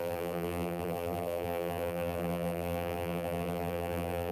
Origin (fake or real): fake